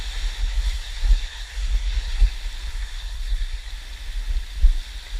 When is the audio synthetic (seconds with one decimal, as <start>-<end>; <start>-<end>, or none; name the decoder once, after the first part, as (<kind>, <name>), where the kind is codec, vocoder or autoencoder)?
0.4-2.3 (codec, SNAC); 2.7-3.7